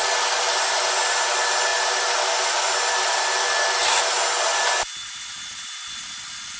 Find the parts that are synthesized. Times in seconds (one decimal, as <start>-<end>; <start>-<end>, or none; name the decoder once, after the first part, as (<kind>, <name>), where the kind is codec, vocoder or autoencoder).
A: none